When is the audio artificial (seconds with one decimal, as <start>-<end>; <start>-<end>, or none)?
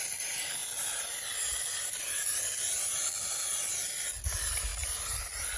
none